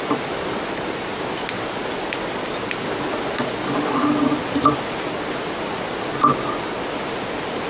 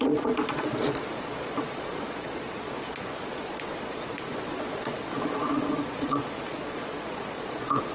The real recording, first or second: first